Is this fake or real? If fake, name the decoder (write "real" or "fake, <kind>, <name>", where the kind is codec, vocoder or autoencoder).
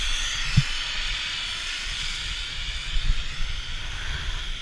real